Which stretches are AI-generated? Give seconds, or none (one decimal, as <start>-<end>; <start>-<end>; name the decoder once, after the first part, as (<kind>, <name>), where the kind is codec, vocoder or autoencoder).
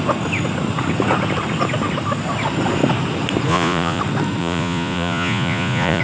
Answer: 3.5-4.0 (vocoder, Vocos); 4.4-6.0